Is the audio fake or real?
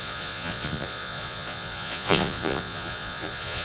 fake